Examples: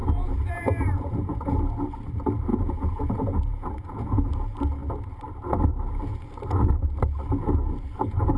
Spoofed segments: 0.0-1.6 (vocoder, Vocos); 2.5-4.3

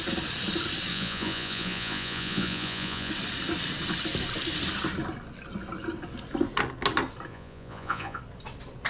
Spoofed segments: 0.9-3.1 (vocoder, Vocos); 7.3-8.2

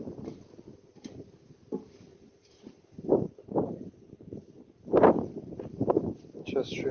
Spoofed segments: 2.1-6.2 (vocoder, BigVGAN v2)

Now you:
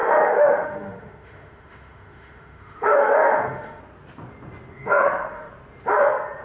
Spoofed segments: 0.0-3.8 (autoencoder, DAC-VAE); 4.7-5.5

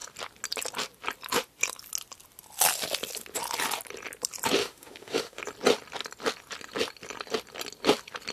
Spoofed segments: 4.6-5.4 (autoencoder, DAC-VAE)

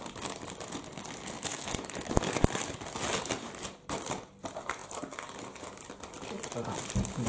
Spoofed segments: 1.5-2.1 (autoencoder, DAC-VAE)

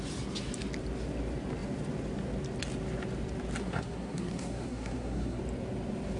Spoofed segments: 3.6-5.4 (codec, SNAC)